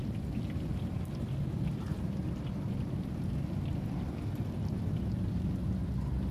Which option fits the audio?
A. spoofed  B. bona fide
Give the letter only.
B